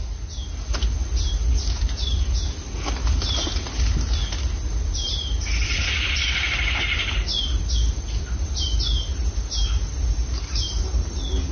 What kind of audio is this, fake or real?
real